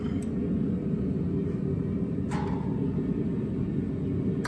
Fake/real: real